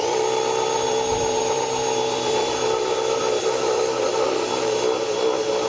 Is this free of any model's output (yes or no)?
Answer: no